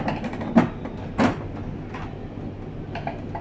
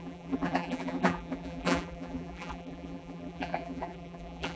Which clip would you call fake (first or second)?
second